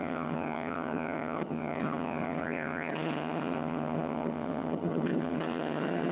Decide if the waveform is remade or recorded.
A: remade